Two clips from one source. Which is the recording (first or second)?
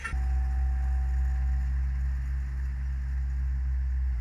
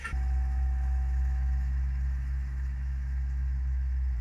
first